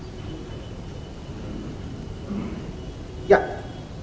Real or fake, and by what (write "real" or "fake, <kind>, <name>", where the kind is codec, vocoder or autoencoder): real